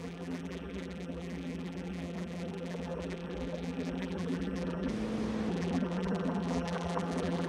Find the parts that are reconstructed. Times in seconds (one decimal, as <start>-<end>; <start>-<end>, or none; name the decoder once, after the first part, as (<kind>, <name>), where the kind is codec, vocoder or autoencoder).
0.0-4.9 (vocoder, BigVGAN v2); 5.5-7.5